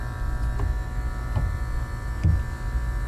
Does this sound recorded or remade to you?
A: recorded